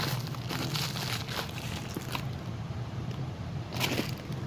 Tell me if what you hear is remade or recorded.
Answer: remade